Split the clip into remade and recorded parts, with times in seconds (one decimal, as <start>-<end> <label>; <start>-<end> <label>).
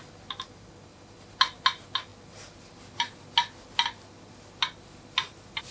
0.0-5.7 recorded